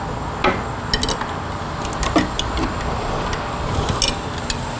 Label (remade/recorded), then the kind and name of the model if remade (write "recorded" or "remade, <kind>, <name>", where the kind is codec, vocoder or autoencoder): recorded